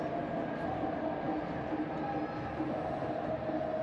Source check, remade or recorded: recorded